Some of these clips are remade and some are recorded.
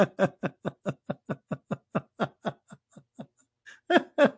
recorded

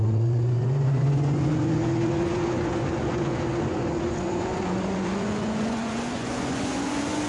remade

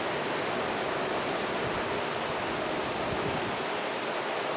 recorded